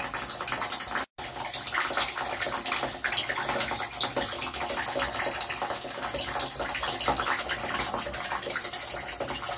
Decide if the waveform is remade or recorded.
recorded